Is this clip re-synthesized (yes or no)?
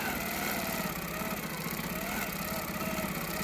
no